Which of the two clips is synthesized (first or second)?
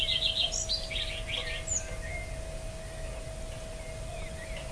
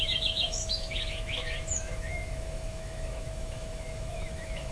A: second